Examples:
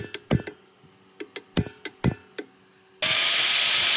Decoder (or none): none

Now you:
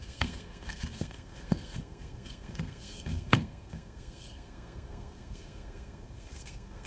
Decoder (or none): codec, SNAC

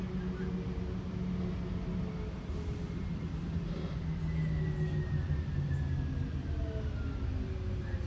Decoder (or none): none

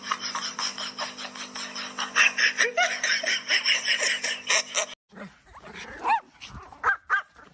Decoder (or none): none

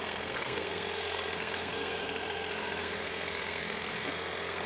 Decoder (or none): codec, SNAC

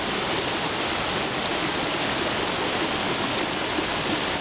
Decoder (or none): none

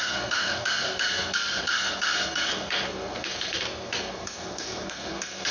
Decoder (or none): codec, SNAC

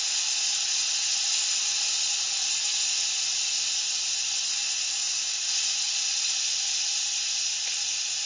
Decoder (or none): none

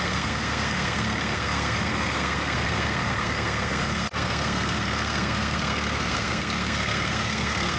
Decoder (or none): codec, SNAC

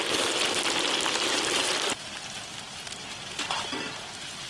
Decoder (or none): none